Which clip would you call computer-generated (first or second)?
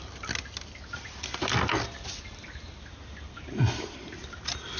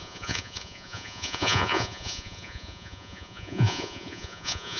second